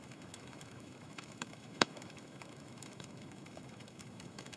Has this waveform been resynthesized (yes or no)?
yes